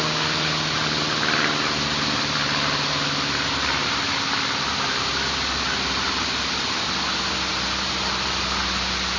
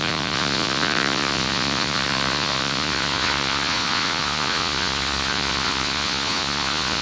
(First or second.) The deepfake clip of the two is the second